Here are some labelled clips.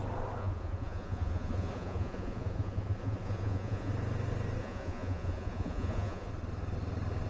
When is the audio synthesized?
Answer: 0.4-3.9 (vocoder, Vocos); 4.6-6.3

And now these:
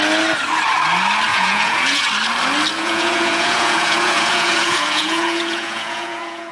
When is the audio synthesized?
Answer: 1.3-2.1 (vocoder, Vocos); 2.7-6.5

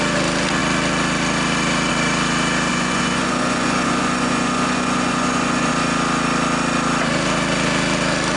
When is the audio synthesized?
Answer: 2.7-5.7 (vocoder, Vocos)

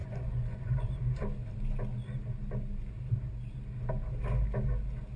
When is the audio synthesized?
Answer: 0.0-0.9 (vocoder, Vocos)

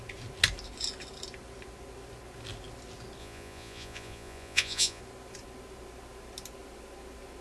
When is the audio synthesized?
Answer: 3.2-5.0 (vocoder, Vocos)